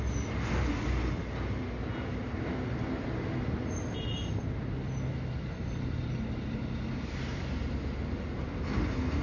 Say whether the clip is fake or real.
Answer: real